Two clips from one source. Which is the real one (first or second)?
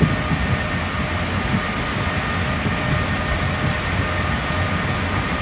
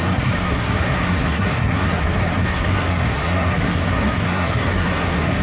first